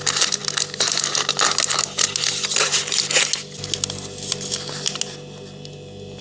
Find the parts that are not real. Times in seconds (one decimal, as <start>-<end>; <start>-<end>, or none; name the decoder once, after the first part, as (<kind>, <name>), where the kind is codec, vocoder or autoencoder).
none